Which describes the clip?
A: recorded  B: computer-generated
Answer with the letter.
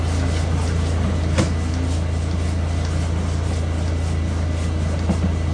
A